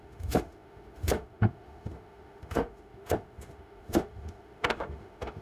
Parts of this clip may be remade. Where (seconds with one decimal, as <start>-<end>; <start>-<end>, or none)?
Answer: 0.0-5.4